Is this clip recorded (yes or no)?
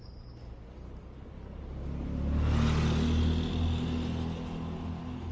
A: yes